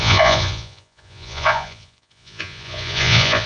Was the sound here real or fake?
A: fake